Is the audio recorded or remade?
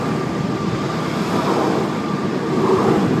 recorded